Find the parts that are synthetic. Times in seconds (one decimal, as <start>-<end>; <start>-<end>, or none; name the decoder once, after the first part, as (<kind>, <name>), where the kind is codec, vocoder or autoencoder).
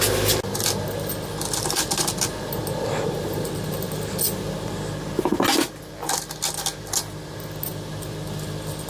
none